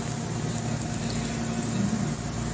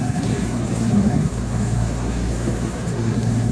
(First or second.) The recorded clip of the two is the first